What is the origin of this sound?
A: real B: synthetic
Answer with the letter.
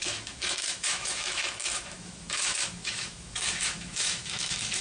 B